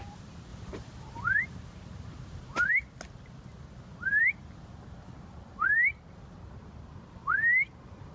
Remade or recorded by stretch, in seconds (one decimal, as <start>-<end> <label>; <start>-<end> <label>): 0.0-0.5 recorded; 0.5-2.7 remade; 2.7-8.1 recorded